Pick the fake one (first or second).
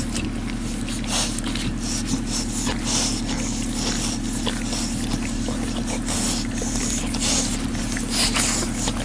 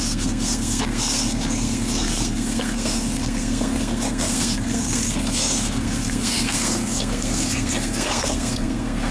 second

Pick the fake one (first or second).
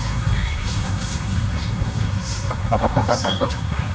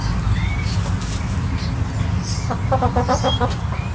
first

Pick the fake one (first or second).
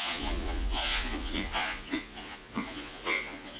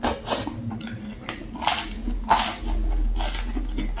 first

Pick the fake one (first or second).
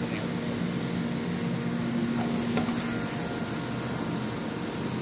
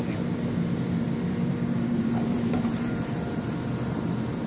second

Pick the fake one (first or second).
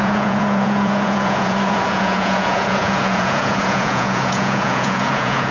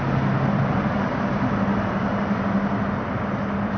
first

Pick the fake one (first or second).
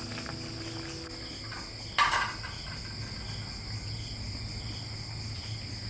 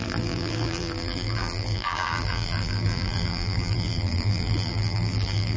second